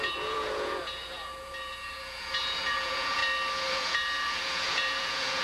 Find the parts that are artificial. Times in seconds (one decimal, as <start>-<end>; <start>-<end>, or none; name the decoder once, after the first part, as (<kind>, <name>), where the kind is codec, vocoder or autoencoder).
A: 0.0-3.2 (vocoder, Vocos); 3.7-5.4